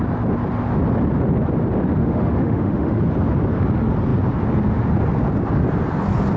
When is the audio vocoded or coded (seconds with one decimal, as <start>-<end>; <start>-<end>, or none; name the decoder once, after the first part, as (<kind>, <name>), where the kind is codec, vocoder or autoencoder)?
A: 2.0-3.0 (autoencoder, DAC-VAE)

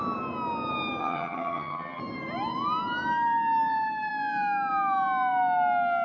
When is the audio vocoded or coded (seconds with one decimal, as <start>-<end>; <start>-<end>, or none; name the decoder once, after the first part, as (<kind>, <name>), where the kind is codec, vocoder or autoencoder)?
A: 1.0-2.0 (vocoder, HiFi-GAN)

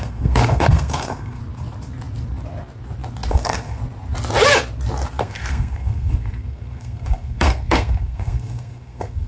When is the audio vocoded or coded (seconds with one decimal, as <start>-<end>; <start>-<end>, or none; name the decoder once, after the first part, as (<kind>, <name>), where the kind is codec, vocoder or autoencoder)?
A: 0.0-1.4 (codec, SNAC); 3.3-3.8; 5.2-9.3

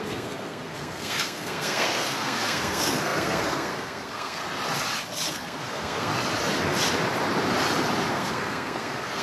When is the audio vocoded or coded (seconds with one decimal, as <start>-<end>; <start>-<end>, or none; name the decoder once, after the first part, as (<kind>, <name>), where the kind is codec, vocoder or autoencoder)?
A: 0.0-4.4 (codec, SNAC); 5.3-6.1; 8.1-9.2

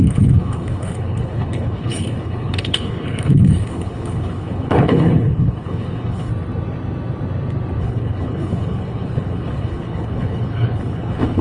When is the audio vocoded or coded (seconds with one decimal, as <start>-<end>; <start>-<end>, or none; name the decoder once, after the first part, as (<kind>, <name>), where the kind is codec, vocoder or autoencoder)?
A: 0.0-6.3 (codec, HILCodec); 7.8-11.4

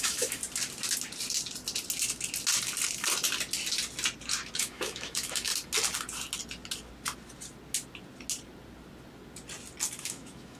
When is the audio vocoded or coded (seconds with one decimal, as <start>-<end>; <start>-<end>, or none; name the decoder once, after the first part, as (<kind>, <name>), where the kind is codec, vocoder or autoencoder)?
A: 0.0-0.4 (autoencoder, DAC-VAE); 4.6-5.5; 10.0-10.6

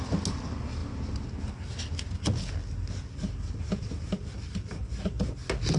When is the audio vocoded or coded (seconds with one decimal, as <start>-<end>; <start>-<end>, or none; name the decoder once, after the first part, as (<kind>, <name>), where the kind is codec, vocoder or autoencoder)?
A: none